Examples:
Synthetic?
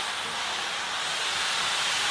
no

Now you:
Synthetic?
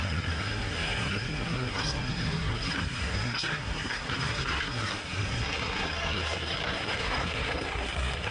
yes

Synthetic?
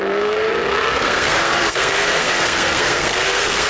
yes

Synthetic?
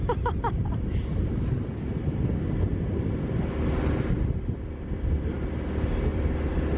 no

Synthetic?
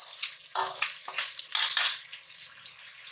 no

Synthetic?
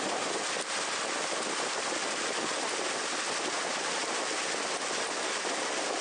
no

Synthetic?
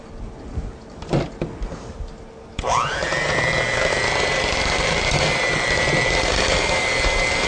no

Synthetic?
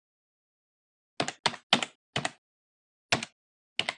no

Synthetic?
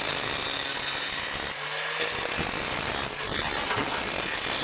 no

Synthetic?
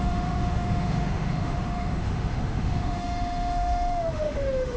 yes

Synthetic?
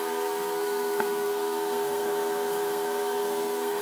yes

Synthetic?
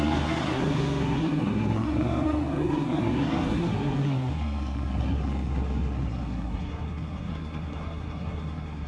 yes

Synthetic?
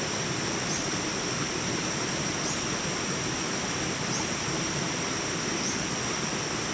no